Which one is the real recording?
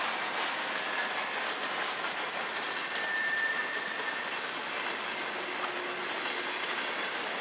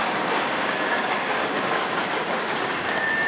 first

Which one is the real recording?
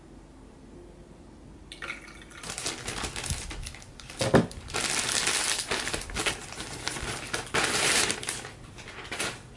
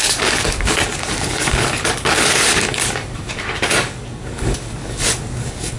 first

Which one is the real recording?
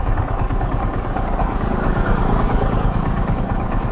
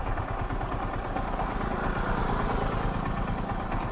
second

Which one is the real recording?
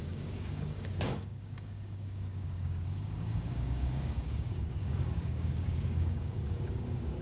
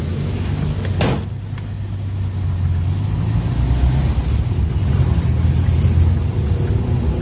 second